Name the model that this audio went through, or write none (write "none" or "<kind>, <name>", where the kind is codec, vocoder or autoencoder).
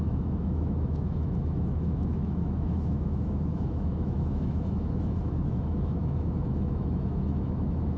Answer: autoencoder, DAC-VAE